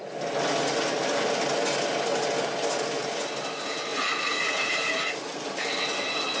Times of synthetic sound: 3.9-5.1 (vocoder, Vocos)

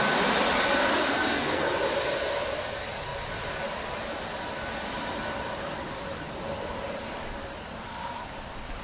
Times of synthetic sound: 1.0-1.8 (codec, SNAC)

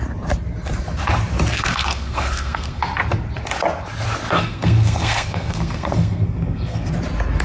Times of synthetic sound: 1.5-2.8 (codec, SNAC); 4.4-6.9

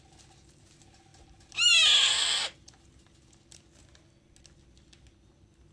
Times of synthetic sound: none

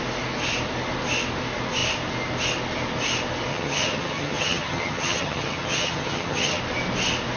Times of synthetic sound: 3.5-6.6 (vocoder, HiFi-GAN)